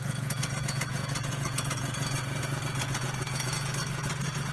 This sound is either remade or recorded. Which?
remade